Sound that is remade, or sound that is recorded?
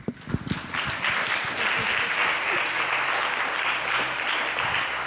recorded